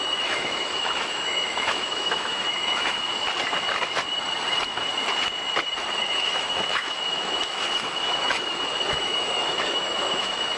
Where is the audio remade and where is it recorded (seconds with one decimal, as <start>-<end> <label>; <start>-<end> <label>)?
0.0-3.1 remade; 3.1-5.9 recorded; 5.9-10.6 remade